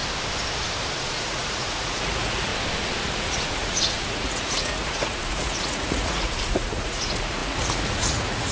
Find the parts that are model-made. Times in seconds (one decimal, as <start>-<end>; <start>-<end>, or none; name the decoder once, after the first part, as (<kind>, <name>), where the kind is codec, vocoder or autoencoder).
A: 0.9-2.5 (vocoder, Vocos); 3.1-8.5

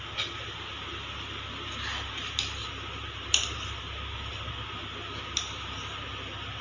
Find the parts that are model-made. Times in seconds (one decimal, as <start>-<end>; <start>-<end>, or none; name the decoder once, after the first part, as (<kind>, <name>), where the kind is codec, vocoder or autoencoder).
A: none

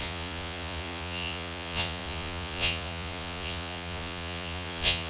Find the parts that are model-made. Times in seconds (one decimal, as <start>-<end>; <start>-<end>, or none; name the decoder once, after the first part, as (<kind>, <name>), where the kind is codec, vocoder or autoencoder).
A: 0.0-5.1 (vocoder, Vocos)

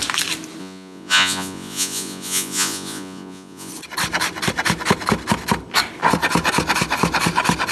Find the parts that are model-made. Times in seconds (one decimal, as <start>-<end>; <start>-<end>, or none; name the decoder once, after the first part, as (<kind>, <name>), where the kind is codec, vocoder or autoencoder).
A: 0.6-3.7 (vocoder, Vocos)

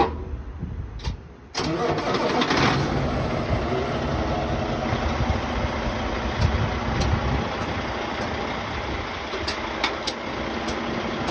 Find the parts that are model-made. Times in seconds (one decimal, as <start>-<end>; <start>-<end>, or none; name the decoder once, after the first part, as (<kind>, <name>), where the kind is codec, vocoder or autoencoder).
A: none

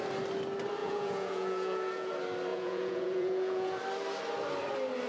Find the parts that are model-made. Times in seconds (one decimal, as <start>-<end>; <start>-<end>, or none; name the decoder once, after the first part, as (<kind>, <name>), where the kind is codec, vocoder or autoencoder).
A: 0.8-2.1 (vocoder, Vocos); 2.5-3.8

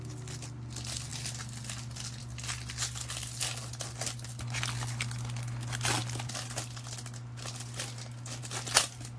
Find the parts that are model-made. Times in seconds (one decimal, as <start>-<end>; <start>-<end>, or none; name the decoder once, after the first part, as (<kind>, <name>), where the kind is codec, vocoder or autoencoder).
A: none

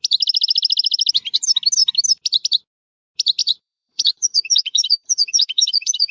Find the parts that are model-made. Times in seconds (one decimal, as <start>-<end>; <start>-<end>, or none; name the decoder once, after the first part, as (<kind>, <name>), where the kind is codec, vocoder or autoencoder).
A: 3.4-6.1 (vocoder, Vocos)